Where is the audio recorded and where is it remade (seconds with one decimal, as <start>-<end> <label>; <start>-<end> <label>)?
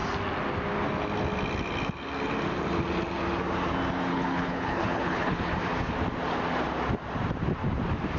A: 0.0-4.1 recorded; 4.1-5.4 remade; 5.4-8.2 recorded